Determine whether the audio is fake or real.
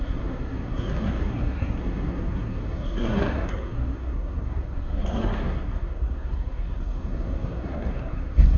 fake